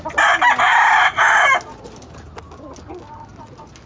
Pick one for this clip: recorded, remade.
recorded